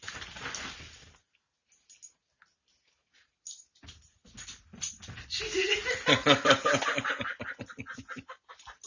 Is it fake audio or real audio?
real